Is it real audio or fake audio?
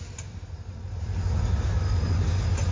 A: real